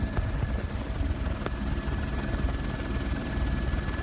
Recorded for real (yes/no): yes